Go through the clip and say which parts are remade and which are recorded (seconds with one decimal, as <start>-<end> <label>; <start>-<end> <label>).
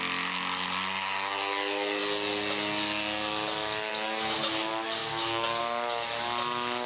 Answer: 0.0-5.0 recorded; 5.0-5.6 remade; 5.6-6.9 recorded